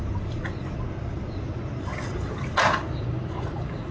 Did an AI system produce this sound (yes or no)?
no